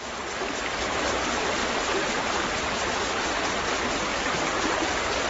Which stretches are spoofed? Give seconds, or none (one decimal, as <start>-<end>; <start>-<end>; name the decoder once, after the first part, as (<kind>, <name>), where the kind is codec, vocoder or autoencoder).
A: 1.6-2.6 (vocoder, BigVGAN v2); 4.1-5.3